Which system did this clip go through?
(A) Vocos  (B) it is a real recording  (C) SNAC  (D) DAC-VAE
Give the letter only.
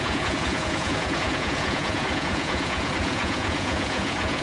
A